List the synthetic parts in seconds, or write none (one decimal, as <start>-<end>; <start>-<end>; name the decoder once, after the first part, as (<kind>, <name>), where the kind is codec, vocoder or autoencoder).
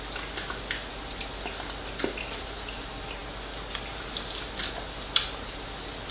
none